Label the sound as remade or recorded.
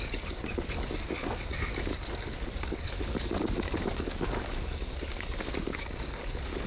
remade